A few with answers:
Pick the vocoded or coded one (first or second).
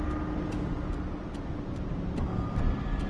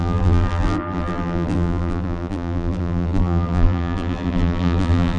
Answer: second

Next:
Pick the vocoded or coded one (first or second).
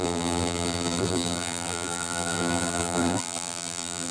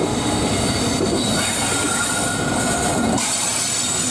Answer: first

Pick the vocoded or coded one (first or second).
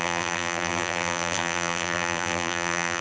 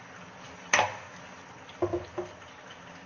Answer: first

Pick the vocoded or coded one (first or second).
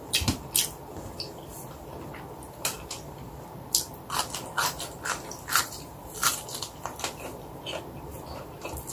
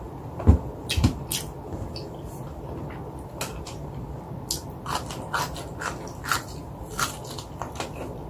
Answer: first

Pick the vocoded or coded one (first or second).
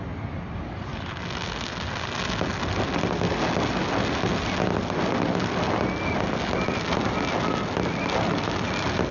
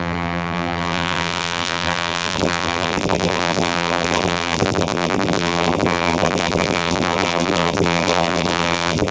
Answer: second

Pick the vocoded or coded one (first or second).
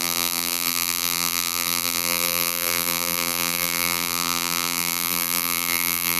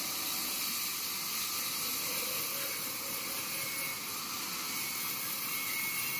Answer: first